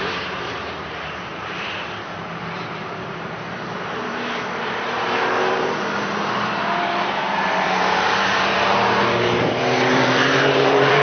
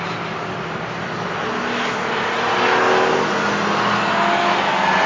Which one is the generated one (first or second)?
first